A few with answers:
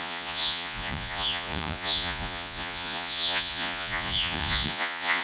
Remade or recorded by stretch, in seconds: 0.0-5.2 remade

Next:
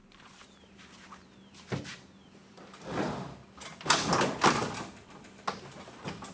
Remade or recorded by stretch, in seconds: 0.0-2.6 remade; 2.6-6.3 recorded

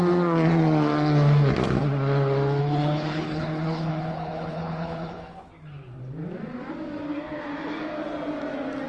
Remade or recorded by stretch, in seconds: 0.0-2.6 recorded; 2.6-5.5 remade; 5.5-8.9 recorded

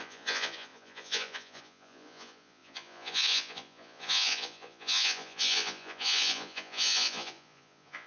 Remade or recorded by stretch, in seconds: 0.0-8.1 remade

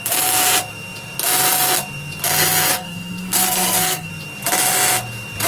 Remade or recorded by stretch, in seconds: 0.0-2.7 recorded; 2.7-4.1 remade; 4.1-5.5 recorded

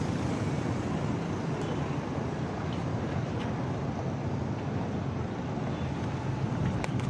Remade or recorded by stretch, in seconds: 0.0-2.8 recorded; 2.8-3.4 remade; 3.4-7.1 recorded